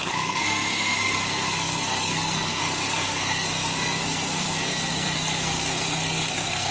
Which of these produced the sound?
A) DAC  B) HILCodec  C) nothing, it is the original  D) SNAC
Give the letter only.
D